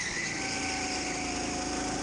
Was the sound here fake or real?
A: real